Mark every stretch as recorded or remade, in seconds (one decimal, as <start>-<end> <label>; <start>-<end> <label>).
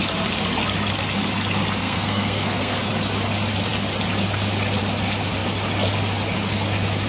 0.0-1.8 recorded; 1.8-2.9 remade; 2.9-7.1 recorded